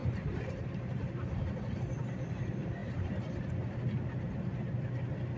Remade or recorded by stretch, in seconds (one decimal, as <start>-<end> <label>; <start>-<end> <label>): 0.0-1.3 remade; 1.3-2.8 recorded; 2.8-3.5 remade; 3.5-5.4 recorded